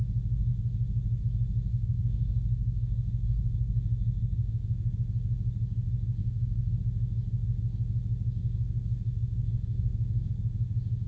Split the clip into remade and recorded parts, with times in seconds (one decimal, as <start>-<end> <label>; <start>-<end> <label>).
0.0-1.7 recorded; 1.7-4.9 remade; 4.9-6.2 recorded; 6.2-6.8 remade; 6.8-8.4 recorded; 8.4-10.3 remade; 10.3-11.1 recorded